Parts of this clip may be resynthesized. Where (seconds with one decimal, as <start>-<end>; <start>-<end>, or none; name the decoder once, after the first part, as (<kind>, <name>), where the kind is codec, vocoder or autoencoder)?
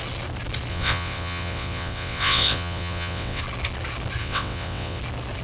0.7-3.4 (vocoder, WaveNeXt); 4.2-5.0